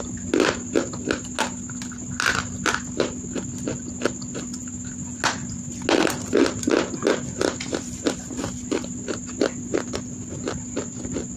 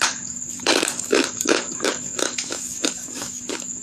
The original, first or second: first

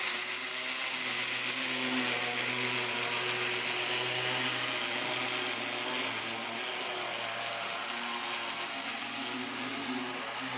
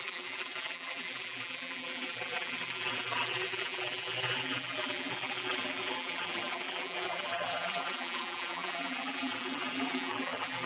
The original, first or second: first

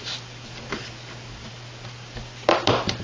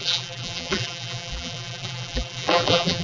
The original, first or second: first